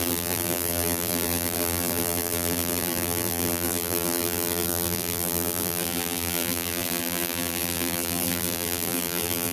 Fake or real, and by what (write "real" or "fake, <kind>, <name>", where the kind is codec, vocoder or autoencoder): fake, vocoder, BigVGAN v2